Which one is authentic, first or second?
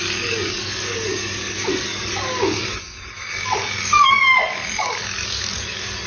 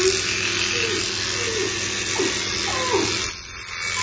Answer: second